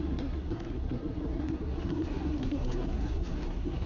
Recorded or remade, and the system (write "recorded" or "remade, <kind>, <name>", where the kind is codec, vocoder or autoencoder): remade, codec, SNAC